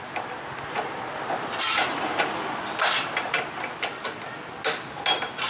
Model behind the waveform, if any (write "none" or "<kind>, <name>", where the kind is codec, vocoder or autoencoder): none